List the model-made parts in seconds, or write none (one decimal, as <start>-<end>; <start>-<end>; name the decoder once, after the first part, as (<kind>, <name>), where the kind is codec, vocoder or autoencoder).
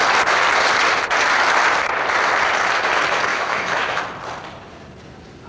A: 3.3-4.0 (autoencoder, DAC-VAE)